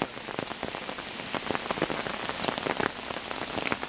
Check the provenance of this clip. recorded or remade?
recorded